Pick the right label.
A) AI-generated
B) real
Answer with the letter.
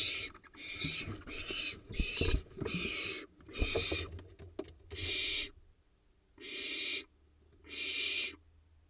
B